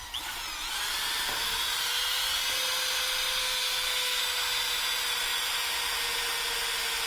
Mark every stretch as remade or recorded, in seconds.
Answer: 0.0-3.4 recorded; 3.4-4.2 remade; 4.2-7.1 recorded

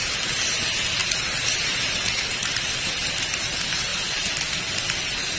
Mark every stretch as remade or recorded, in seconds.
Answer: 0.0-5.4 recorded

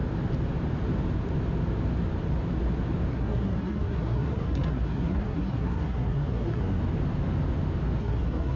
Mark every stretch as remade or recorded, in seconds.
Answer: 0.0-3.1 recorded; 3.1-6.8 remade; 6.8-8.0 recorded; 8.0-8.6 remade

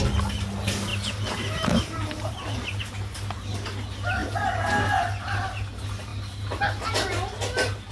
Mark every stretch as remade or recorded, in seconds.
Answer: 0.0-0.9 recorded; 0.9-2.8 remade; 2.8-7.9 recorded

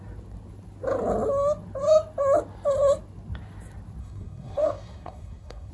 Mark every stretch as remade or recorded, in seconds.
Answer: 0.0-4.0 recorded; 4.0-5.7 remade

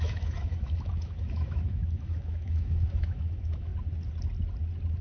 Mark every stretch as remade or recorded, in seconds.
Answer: 0.0-3.7 remade; 3.7-5.0 recorded

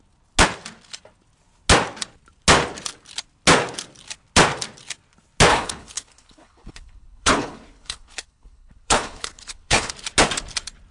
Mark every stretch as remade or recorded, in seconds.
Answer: 0.0-5.5 recorded; 5.5-9.9 remade; 9.9-10.9 recorded